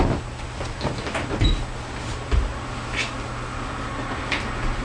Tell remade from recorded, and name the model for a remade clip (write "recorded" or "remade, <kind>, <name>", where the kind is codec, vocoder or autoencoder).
recorded